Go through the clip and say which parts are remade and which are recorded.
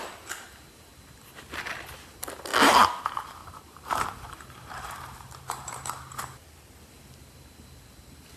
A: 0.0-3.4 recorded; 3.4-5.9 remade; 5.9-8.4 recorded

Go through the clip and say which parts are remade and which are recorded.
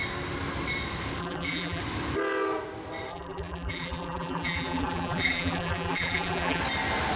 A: 0.0-1.2 recorded; 1.2-1.8 remade; 1.8-3.1 recorded; 3.1-6.6 remade; 6.6-7.2 recorded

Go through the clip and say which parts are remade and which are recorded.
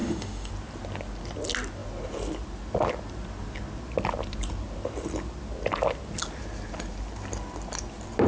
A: 0.0-0.5 remade; 0.5-8.3 recorded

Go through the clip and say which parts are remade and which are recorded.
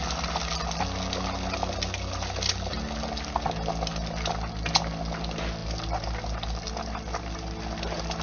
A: 0.0-5.6 recorded; 5.6-8.2 remade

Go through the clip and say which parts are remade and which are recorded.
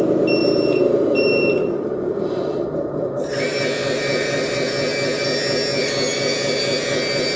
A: 0.0-0.4 recorded; 0.4-3.2 remade; 3.2-3.8 recorded; 3.8-4.7 remade; 4.7-7.4 recorded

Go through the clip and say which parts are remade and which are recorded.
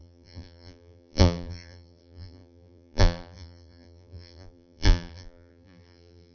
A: 0.0-6.3 remade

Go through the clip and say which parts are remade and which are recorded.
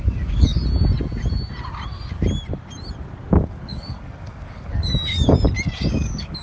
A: 0.0-0.6 remade; 0.6-3.4 recorded; 3.4-4.9 remade; 4.9-5.9 recorded; 5.9-6.4 remade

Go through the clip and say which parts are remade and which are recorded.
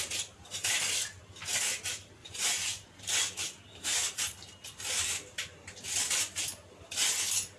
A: 0.0-2.2 recorded; 2.2-3.0 remade; 3.0-7.6 recorded